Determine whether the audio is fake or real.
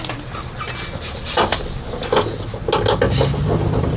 real